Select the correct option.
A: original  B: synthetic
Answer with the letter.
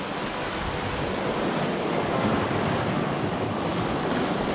A